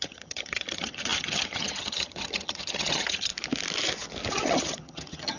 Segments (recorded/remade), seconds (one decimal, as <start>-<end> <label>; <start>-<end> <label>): 0.0-3.3 remade; 3.3-4.3 recorded; 4.3-5.4 remade